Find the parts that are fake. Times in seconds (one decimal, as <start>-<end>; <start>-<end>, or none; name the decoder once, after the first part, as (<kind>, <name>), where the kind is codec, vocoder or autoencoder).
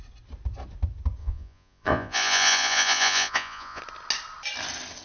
1.2-3.8 (vocoder, Vocos)